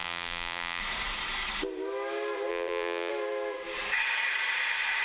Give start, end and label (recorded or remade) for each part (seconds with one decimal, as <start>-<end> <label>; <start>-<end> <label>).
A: 0.0-0.8 remade; 0.8-2.5 recorded; 2.5-3.1 remade; 3.1-5.0 recorded